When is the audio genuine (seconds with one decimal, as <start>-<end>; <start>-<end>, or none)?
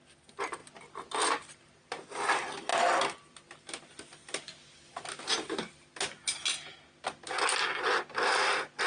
0.0-8.9